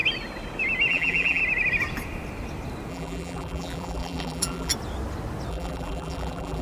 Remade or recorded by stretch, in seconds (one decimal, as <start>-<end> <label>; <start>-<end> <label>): 0.0-0.9 recorded; 0.9-1.4 remade; 1.4-2.9 recorded; 2.9-4.7 remade; 4.7-5.5 recorded; 5.5-6.6 remade